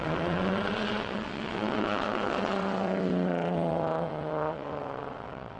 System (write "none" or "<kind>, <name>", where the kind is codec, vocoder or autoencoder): vocoder, WaveNeXt